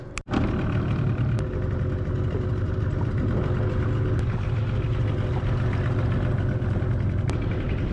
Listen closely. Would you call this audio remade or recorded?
recorded